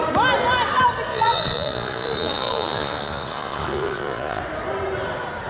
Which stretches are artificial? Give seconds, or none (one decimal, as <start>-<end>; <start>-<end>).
1.1-4.4